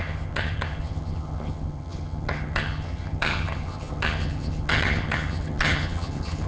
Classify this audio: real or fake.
fake